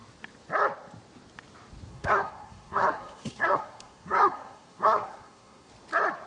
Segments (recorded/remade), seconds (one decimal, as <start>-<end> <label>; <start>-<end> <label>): 0.0-1.9 recorded; 1.9-5.7 remade; 5.7-6.3 recorded